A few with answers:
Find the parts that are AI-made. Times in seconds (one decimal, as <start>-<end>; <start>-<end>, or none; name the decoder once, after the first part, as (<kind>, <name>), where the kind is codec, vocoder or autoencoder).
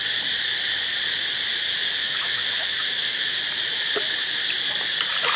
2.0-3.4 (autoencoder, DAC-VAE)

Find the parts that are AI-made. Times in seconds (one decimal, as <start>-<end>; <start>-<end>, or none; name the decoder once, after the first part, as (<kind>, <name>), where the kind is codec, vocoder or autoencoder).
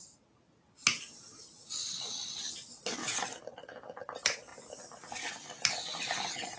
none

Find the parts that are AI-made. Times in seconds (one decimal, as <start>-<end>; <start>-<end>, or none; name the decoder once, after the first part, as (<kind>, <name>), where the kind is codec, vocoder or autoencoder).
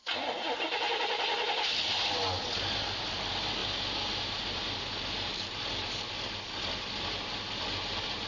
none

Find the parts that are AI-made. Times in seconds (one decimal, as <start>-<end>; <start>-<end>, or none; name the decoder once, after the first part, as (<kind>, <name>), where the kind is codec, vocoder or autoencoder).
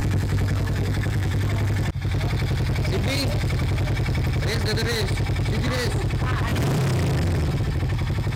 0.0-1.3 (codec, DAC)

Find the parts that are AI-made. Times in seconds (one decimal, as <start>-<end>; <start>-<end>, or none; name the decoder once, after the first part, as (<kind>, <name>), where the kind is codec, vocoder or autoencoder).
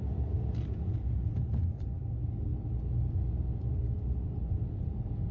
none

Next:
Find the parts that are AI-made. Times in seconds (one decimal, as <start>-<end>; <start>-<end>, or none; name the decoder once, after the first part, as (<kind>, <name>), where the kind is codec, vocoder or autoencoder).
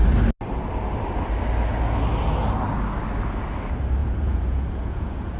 4.0-5.4 (vocoder, Vocos)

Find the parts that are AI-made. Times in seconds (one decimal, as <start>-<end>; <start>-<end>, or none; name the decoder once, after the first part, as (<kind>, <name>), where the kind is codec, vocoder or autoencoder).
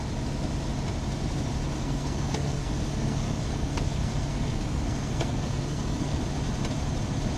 1.8-6.2 (codec, SNAC)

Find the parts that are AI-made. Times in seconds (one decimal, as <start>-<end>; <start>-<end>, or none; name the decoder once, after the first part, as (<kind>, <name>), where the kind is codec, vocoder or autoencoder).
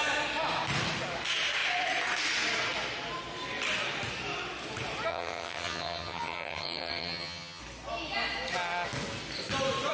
5.1-7.6 (vocoder, HiFi-GAN)